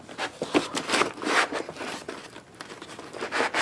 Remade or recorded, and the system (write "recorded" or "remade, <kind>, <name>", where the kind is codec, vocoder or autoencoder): recorded